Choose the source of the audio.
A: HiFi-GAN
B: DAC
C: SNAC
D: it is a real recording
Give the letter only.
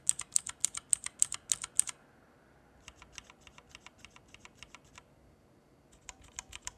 D